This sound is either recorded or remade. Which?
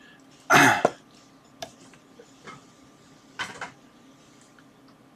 recorded